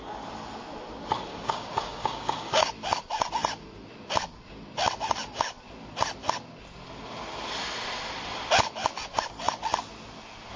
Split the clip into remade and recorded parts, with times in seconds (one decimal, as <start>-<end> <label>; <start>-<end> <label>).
0.0-1.3 recorded; 1.3-2.7 remade; 2.7-10.6 recorded